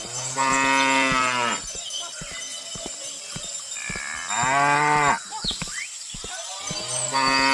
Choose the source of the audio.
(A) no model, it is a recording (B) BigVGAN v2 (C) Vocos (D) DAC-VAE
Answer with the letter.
A